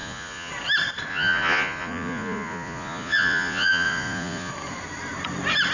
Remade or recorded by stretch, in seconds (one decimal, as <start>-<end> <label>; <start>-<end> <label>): 0.0-0.5 remade; 0.5-1.1 recorded; 1.1-4.5 remade; 4.5-5.7 recorded